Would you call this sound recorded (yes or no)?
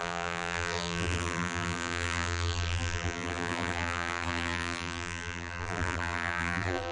no